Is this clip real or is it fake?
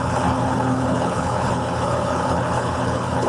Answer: fake